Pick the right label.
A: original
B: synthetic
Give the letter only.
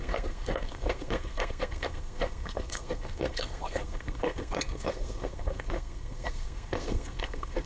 B